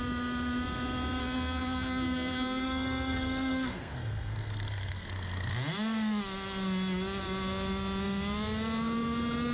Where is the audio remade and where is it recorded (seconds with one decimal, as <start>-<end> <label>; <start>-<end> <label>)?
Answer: 0.0-1.2 recorded; 1.2-5.5 remade; 5.5-9.5 recorded